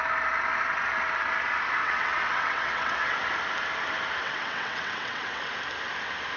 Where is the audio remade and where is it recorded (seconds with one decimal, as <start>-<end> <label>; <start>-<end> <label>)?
0.0-1.8 recorded; 1.8-3.2 remade; 3.2-4.2 recorded; 4.2-5.4 remade; 5.4-6.4 recorded